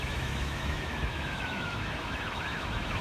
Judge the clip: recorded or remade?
remade